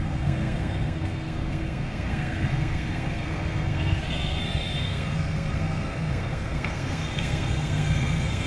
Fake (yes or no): yes